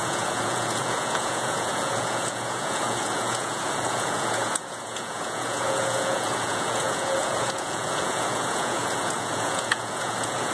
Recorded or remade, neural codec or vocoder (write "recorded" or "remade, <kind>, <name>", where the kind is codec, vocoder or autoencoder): remade, vocoder, Vocos